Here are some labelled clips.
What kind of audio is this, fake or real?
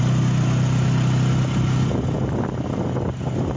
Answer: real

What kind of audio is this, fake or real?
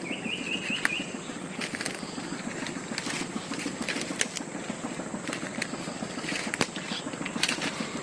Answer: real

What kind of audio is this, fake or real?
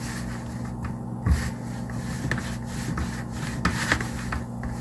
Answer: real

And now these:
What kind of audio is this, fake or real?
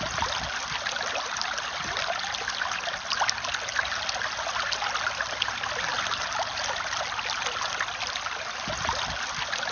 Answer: real